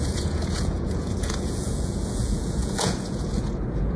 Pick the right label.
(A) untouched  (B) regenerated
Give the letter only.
B